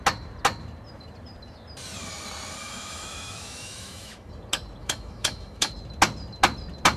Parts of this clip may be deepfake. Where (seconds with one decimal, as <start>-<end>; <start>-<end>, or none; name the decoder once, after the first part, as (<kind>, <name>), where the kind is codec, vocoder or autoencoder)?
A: 2.6-4.3 (autoencoder, DAC-VAE); 4.8-5.7